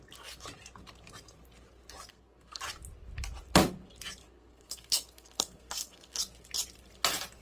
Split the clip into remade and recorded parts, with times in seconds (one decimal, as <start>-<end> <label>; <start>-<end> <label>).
0.0-2.1 recorded; 2.1-2.6 remade; 2.6-4.2 recorded; 4.2-6.2 remade; 6.2-7.4 recorded